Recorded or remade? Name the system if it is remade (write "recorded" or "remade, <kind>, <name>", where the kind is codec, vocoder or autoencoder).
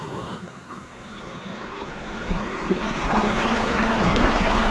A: remade, codec, SNAC